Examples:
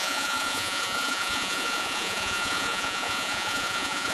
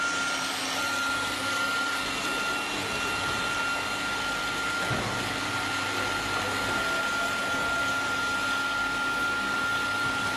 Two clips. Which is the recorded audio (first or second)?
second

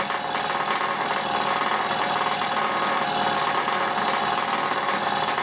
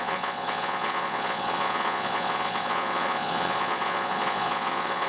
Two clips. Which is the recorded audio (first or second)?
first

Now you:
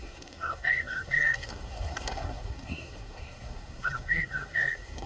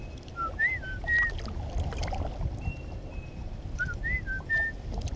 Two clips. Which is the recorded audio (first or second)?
second